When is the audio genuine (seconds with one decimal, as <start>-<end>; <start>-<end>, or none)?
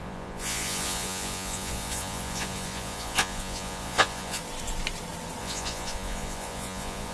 4.4-5.4